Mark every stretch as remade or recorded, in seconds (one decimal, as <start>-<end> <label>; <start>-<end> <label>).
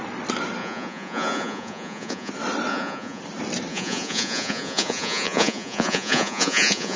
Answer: 0.0-0.6 recorded; 0.6-2.3 remade; 2.3-2.7 recorded; 2.7-3.2 remade; 3.2-3.7 recorded; 3.7-7.0 remade